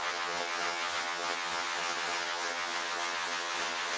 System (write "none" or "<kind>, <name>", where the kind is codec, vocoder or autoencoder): vocoder, HiFi-GAN